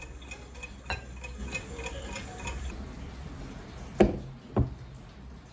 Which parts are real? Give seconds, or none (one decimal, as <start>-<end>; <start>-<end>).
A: 0.0-1.4; 4.0-5.5